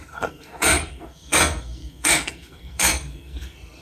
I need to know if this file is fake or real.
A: fake